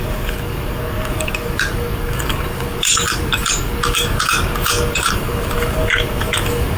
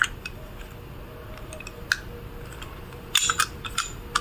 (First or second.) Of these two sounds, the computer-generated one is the first